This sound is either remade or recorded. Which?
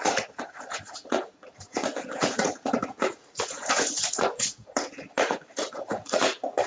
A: remade